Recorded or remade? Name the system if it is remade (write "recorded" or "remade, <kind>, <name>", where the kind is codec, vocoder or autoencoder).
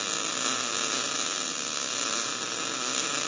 recorded